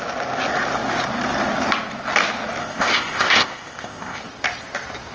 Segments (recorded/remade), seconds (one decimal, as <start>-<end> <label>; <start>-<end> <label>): 0.0-2.6 recorded; 2.6-4.2 remade; 4.2-5.1 recorded